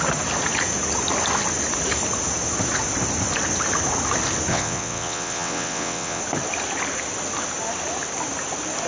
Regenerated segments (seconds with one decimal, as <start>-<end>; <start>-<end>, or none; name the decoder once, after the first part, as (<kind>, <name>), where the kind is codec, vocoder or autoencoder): 4.5-6.2 (vocoder, WaveNeXt)